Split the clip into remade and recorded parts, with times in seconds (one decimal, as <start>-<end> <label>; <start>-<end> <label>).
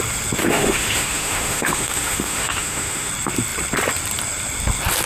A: 0.0-0.4 recorded; 0.4-3.1 remade; 3.1-5.1 recorded